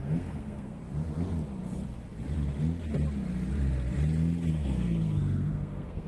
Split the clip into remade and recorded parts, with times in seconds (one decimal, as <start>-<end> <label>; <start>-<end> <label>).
0.0-0.8 remade; 0.8-4.5 recorded; 4.5-6.1 remade

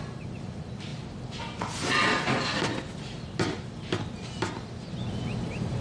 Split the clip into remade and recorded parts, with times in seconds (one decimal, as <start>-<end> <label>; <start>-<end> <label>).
0.0-5.8 recorded

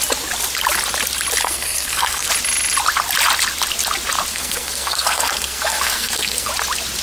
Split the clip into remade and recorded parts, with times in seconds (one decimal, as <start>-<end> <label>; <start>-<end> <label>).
0.0-1.4 recorded; 1.4-2.3 remade; 2.3-4.3 recorded; 4.3-6.5 remade; 6.5-7.0 recorded

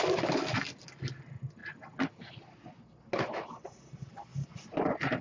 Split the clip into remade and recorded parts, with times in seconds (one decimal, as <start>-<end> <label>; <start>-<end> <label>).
0.0-5.2 recorded

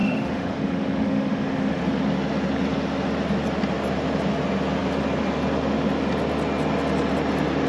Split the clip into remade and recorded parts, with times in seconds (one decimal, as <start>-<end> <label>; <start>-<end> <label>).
0.0-1.8 remade; 1.8-7.7 recorded

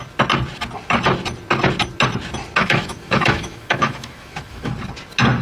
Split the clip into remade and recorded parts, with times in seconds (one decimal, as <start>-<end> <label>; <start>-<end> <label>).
0.0-2.6 recorded; 2.6-4.7 remade; 4.7-5.4 recorded

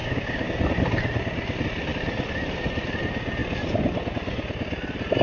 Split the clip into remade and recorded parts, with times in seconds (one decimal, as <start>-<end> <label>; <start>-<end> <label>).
0.0-0.5 remade; 0.5-5.2 recorded

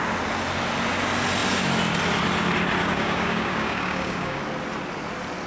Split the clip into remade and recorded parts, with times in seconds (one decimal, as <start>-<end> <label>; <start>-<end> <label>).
0.0-2.8 recorded; 2.8-4.4 remade; 4.4-5.5 recorded